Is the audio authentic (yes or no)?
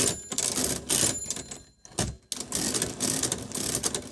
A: yes